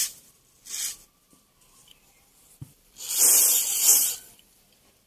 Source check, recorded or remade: remade